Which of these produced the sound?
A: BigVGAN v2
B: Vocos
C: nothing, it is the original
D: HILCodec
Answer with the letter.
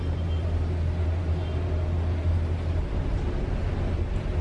C